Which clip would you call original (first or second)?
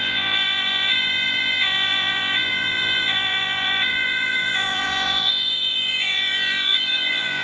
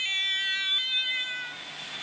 second